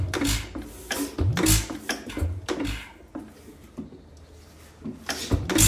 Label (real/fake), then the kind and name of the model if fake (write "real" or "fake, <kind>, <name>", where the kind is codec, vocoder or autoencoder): real